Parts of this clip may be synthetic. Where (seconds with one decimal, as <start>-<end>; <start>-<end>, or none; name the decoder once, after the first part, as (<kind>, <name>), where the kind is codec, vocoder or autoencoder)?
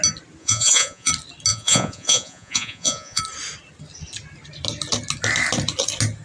0.4-1.1 (vocoder, Vocos); 1.5-3.2